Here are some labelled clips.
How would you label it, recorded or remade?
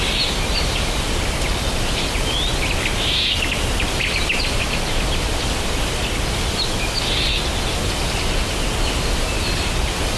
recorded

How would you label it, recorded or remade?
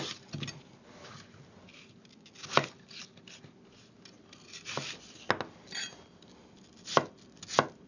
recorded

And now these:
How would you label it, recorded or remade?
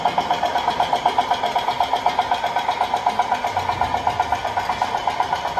recorded